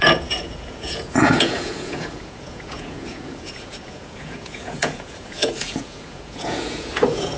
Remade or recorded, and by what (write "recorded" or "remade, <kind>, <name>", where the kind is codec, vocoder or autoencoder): remade, vocoder, Vocos